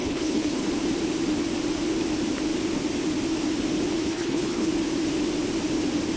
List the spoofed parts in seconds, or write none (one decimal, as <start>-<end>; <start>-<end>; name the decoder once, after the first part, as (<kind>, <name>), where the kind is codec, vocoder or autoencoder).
0.0-0.7 (codec, HILCodec); 4.0-4.7